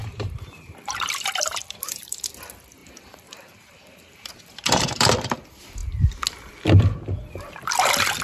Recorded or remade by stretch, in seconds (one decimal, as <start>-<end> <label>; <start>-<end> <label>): 0.0-2.2 remade; 2.2-2.8 recorded; 2.8-5.1 remade; 5.1-8.2 recorded